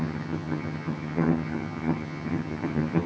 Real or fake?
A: fake